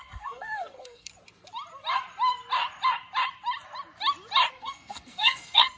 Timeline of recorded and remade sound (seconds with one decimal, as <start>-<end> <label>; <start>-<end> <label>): 0.0-1.1 remade; 1.1-4.5 recorded; 4.5-5.8 remade